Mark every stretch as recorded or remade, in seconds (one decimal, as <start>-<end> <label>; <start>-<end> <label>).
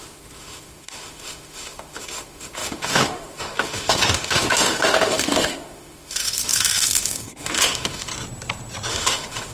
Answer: 0.0-8.1 remade; 8.1-8.9 recorded; 8.9-9.5 remade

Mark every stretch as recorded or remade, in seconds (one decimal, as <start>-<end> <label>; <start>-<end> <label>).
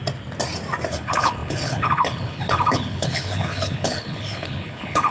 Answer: 0.0-0.9 recorded; 0.9-5.1 remade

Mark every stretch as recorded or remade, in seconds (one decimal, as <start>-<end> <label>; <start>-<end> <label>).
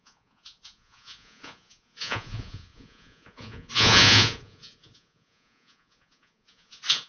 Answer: 0.0-7.1 remade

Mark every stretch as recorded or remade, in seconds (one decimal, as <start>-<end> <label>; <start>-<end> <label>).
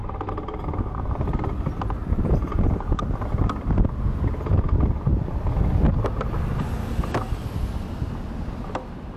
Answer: 0.0-9.2 recorded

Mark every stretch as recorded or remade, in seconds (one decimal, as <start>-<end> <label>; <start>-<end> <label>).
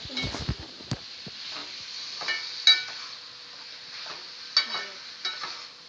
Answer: 0.0-5.9 recorded